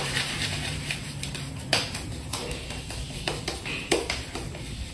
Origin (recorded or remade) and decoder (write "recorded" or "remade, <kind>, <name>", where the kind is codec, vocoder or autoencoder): remade, vocoder, BigVGAN v2